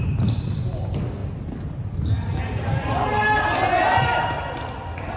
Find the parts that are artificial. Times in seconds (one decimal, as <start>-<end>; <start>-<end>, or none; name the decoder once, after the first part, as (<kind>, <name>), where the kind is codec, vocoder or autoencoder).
none